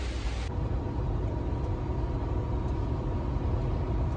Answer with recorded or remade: recorded